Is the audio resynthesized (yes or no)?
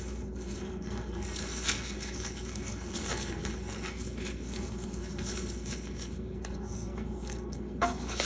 yes